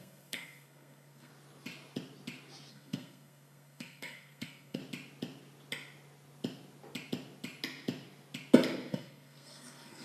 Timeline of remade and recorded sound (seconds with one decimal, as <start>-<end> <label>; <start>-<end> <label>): 0.0-1.3 remade; 1.3-2.7 recorded; 2.7-4.8 remade; 4.8-8.9 recorded; 8.9-10.0 remade